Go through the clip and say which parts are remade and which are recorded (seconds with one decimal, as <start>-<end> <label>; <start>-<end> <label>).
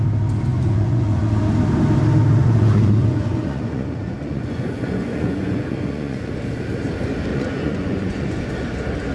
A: 0.0-0.5 recorded; 0.5-1.4 remade; 1.4-2.4 recorded; 2.4-6.3 remade; 6.3-7.3 recorded; 7.3-8.5 remade; 8.5-9.1 recorded